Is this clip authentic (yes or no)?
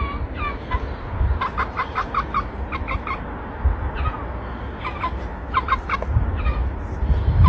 yes